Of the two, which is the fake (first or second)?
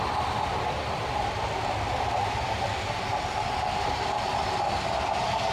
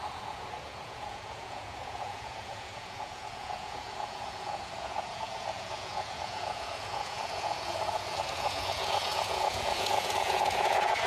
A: second